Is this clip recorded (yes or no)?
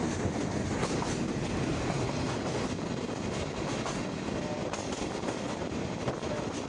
yes